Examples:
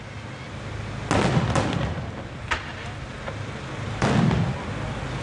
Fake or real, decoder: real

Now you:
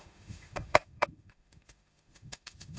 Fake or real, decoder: fake, autoencoder, DAC-VAE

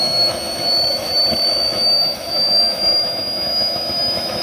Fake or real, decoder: fake, autoencoder, DAC-VAE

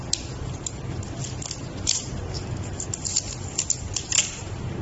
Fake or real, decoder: real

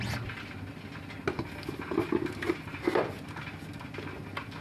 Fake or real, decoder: real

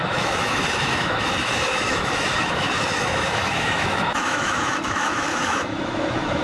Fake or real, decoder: fake, autoencoder, DAC-VAE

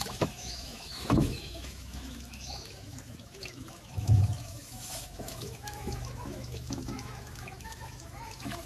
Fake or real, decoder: fake, autoencoder, DAC-VAE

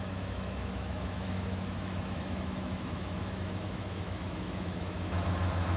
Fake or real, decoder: fake, autoencoder, DAC-VAE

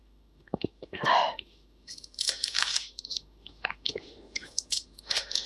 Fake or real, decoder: fake, autoencoder, DAC-VAE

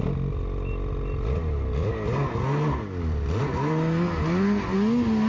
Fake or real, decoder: real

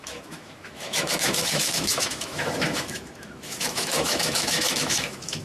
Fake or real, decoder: fake, autoencoder, DAC-VAE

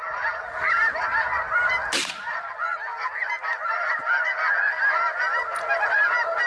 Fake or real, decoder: real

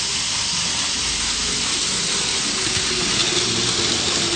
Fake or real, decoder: real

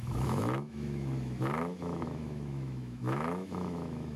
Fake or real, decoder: fake, autoencoder, DAC-VAE